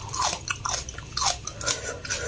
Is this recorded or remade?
recorded